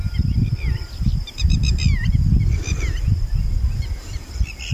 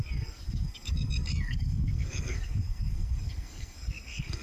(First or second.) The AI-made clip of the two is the second